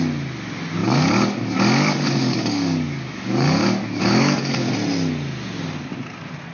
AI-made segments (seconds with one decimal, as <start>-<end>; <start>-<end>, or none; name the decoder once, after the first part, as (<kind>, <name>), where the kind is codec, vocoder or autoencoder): 0.8-4.7 (codec, DAC)